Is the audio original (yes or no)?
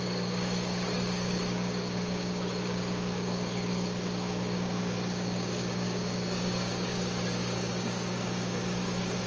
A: no